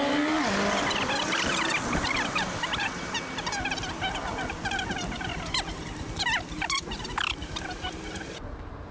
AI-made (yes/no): no